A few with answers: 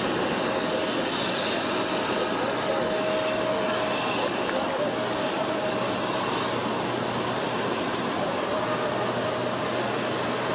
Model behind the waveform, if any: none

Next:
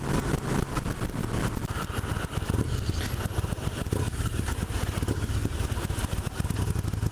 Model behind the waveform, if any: none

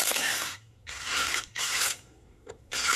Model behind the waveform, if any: codec, SNAC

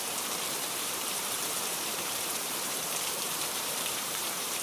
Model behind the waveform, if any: vocoder, BigVGAN v2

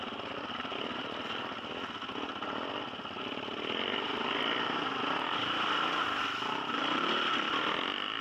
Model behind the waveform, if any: none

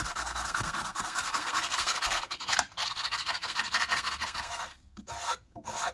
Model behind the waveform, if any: codec, SNAC